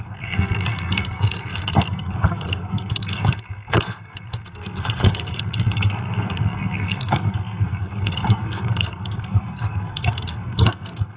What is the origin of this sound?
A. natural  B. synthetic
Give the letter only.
B